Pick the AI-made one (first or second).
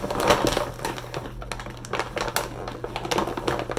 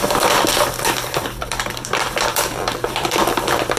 second